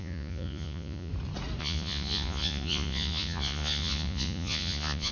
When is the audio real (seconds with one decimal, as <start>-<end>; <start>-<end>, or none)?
1.1-1.6